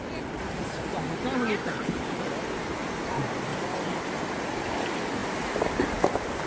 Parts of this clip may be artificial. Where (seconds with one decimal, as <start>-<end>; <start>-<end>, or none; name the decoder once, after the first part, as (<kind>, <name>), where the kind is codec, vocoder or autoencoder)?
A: 1.6-2.2 (codec, HILCodec)